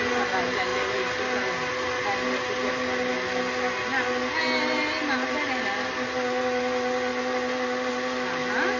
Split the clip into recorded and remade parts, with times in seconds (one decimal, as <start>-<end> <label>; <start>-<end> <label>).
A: 0.0-8.8 recorded